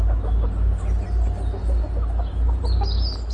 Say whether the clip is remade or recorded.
recorded